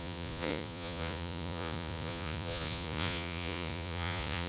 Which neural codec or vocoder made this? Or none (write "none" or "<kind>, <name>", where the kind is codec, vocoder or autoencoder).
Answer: vocoder, Vocos